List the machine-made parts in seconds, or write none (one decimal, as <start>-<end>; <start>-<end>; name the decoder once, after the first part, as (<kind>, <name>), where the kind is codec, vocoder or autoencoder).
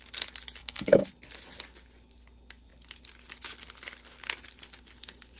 0.6-1.1 (codec, SNAC)